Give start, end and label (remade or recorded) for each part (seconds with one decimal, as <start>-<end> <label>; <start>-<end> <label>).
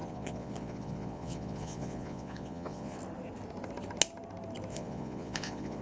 0.0-3.0 remade; 3.0-4.7 recorded; 4.7-5.8 remade